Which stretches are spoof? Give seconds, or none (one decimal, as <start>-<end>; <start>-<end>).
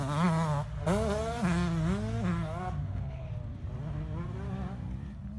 2.8-3.3